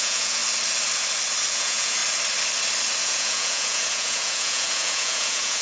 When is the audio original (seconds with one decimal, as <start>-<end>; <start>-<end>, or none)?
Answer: 0.4-1.5; 2.0-3.0